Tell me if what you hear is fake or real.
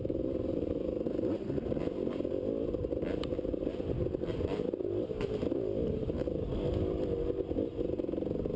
real